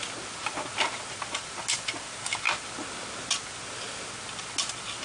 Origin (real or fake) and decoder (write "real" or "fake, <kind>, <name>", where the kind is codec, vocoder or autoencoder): real